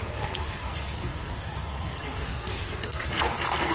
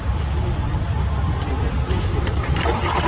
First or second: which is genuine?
second